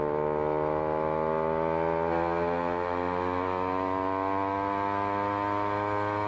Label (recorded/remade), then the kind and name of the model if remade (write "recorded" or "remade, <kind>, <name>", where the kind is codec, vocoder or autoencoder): recorded